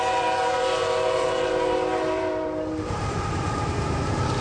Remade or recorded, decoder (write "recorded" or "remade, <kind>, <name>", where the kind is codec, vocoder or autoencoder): remade, vocoder, BigVGAN v2